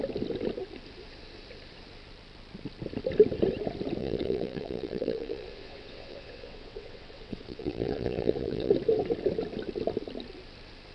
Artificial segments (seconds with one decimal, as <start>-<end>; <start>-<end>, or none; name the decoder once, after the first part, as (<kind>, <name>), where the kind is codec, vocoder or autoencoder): 4.0-8.7 (vocoder, WaveNeXt)